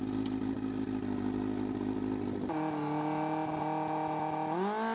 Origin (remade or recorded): recorded